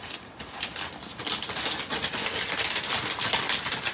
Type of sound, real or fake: real